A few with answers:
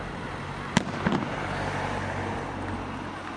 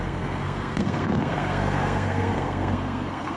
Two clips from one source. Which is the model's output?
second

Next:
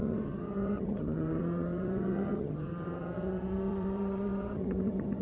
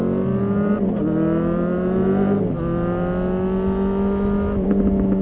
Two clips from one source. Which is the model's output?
first